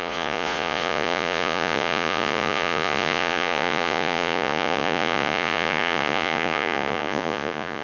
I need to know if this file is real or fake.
fake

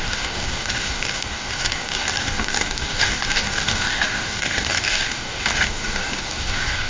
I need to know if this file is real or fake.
fake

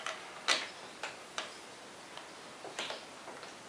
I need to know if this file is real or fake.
real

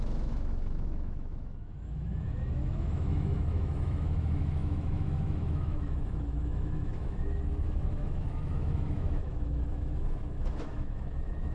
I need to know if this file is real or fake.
fake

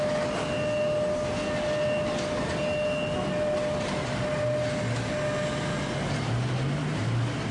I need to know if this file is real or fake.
real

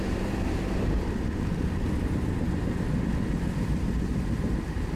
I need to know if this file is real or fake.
fake